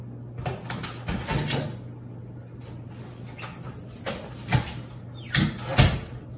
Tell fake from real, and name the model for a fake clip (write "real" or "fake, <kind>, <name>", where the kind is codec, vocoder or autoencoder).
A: real